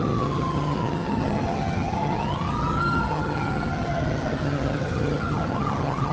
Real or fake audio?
fake